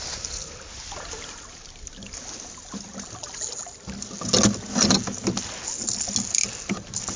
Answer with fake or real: real